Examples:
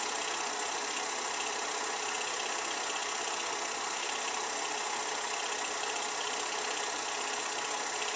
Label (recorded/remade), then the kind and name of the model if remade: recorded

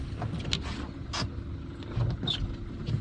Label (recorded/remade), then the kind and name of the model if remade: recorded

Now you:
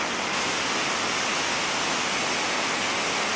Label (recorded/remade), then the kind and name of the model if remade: recorded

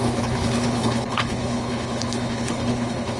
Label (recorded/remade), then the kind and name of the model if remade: remade, codec, HILCodec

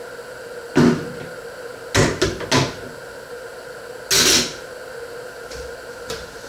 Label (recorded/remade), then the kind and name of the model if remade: recorded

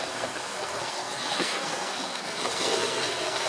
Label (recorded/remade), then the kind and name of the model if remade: remade, codec, SNAC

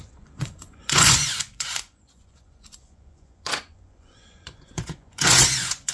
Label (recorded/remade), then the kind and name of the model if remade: remade, vocoder, Vocos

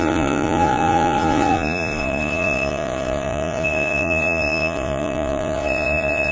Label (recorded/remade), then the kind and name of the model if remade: remade, vocoder, Vocos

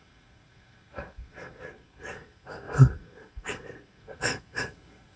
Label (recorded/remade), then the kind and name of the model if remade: remade, codec, SNAC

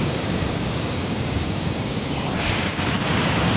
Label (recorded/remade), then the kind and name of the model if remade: remade, codec, DAC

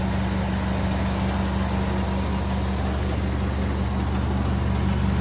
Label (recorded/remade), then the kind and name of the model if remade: recorded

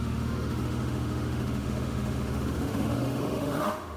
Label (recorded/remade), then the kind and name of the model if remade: remade, autoencoder, DAC-VAE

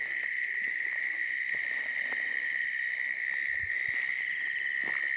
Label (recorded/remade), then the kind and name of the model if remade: recorded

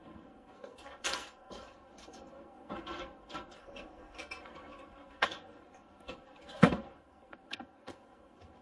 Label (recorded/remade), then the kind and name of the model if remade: remade, codec, SNAC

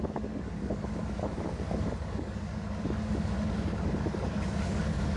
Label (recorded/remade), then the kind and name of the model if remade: remade, codec, DAC